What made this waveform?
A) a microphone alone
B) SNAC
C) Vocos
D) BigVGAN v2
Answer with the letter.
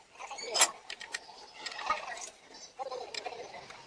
A